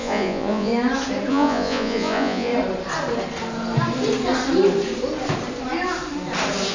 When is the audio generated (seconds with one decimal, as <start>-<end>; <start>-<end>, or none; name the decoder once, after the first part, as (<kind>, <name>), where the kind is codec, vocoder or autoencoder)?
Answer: 0.0-0.7 (vocoder, Vocos); 1.3-2.5